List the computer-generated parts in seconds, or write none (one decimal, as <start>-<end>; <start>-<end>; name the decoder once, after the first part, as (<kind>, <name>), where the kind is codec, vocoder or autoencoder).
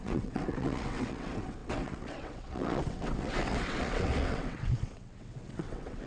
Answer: 0.0-6.1 (vocoder, WaveNeXt)